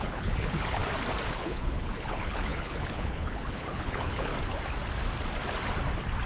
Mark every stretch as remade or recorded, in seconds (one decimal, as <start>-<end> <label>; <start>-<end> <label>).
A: 0.0-0.8 remade; 0.8-1.3 recorded; 1.3-4.3 remade; 4.3-6.3 recorded